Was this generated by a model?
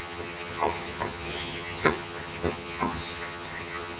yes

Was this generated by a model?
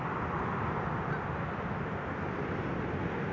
no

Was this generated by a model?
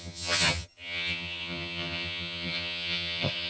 yes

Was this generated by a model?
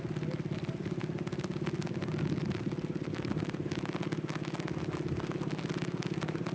no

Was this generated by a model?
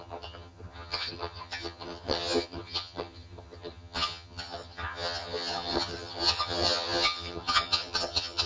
yes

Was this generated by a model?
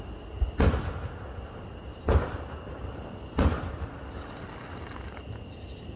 no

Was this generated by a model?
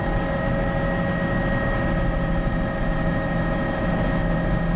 no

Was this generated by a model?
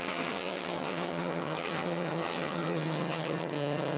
yes